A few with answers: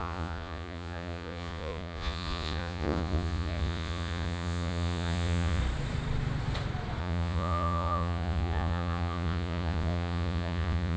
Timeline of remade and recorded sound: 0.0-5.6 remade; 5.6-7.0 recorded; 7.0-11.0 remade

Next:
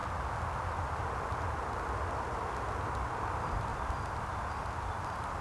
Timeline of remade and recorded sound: 0.0-3.2 recorded; 3.2-3.7 remade; 3.7-4.5 recorded; 4.5-5.4 remade

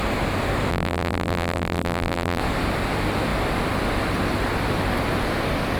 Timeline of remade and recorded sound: 0.0-0.7 recorded; 0.7-2.4 remade; 2.4-5.8 recorded

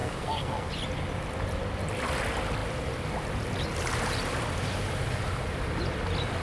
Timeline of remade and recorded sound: 0.0-0.7 remade; 0.7-6.4 recorded

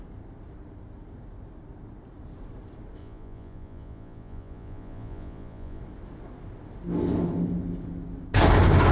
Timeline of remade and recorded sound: 0.0-3.0 recorded; 3.0-5.8 remade; 5.8-8.9 recorded

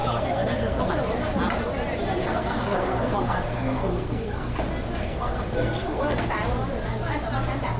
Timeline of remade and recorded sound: 0.0-0.9 remade; 0.9-2.2 recorded; 2.2-4.6 remade; 4.6-5.0 recorded; 5.0-6.3 remade; 6.3-7.8 recorded